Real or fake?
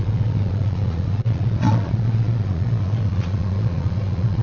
fake